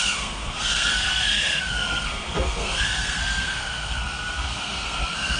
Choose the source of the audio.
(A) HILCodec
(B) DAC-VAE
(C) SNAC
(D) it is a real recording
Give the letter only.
C